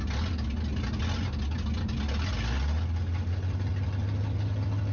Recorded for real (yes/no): yes